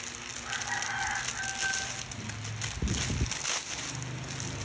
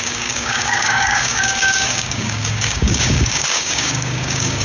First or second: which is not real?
second